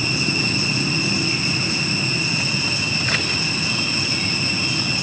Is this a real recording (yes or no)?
yes